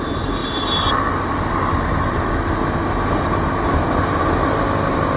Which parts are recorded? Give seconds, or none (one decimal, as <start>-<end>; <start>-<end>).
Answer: 0.0-5.2